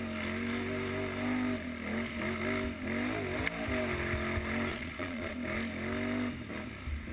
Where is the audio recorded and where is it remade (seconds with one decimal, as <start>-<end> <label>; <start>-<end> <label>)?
0.0-4.7 recorded; 4.7-5.3 remade; 5.3-7.1 recorded